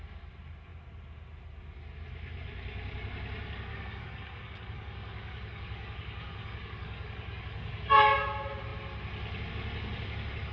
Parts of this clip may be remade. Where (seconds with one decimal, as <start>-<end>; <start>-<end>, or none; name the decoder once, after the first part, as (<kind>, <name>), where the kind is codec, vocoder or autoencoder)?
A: 3.7-8.0 (codec, DAC)